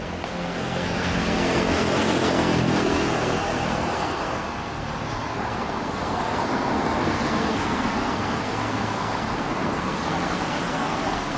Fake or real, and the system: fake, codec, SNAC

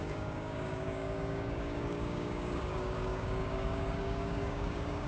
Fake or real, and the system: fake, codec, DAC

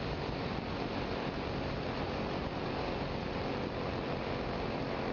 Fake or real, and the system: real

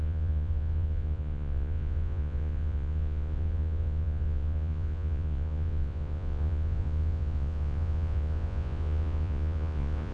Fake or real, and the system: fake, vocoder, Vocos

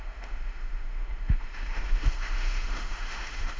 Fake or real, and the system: fake, autoencoder, DAC-VAE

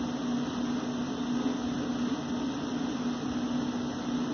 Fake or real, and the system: real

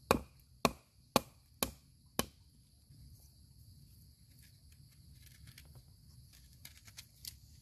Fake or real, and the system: real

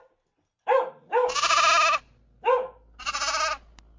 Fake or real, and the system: real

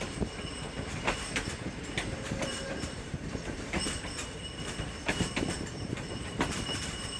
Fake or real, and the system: fake, vocoder, BigVGAN v2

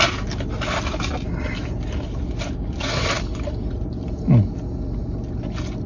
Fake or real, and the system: real